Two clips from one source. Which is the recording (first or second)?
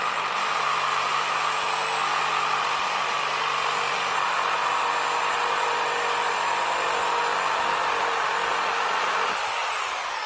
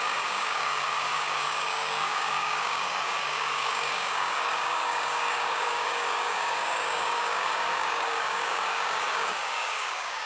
first